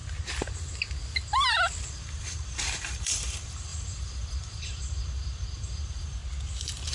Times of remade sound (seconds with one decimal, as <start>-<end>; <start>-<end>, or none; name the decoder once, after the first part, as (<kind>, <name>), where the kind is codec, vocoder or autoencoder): 1.9-6.2 (vocoder, BigVGAN v2)